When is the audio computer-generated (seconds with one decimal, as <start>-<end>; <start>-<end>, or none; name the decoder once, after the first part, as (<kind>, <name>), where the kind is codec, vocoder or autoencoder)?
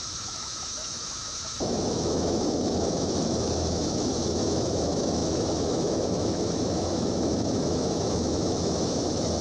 0.0-9.4 (autoencoder, DAC-VAE)